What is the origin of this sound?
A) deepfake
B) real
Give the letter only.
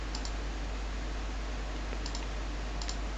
B